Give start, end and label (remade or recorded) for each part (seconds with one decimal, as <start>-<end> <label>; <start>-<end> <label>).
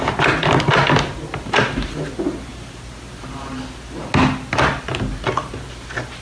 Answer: 0.0-6.2 recorded